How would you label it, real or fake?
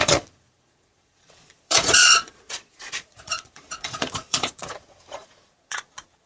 fake